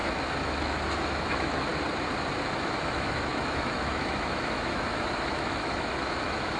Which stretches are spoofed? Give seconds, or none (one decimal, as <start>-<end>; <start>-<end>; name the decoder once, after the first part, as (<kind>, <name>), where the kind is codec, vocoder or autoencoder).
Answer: 0.0-1.7 (autoencoder, DAC-VAE); 2.4-6.6